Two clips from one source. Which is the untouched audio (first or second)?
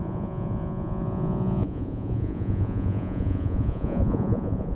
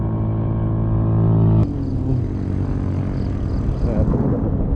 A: second